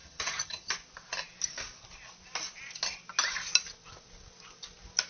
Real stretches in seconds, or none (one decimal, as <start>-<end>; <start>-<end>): 0.7-5.1